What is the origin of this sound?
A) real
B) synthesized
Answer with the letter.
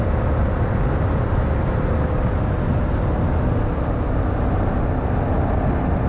A